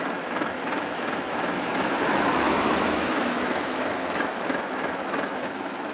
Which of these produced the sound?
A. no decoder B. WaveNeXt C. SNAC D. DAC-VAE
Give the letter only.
D